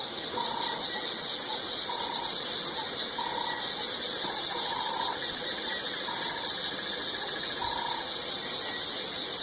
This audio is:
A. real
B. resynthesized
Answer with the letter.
A